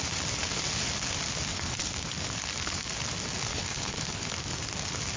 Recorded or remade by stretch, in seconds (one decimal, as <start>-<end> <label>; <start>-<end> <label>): 0.0-1.5 recorded; 1.5-2.0 remade; 2.0-3.5 recorded; 3.5-4.3 remade; 4.3-5.2 recorded